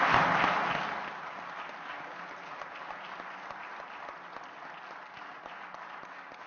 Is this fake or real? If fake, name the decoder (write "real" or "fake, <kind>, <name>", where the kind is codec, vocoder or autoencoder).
real